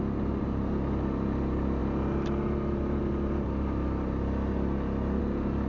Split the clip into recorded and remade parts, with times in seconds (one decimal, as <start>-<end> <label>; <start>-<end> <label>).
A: 0.0-5.7 recorded